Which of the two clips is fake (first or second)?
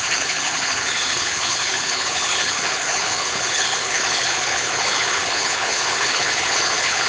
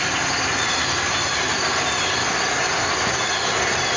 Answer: first